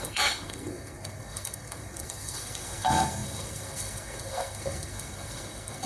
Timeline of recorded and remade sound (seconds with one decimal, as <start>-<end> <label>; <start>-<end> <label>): 0.0-5.9 remade